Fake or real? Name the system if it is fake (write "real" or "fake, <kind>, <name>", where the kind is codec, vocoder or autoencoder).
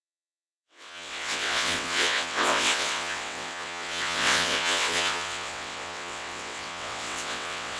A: fake, vocoder, WaveNeXt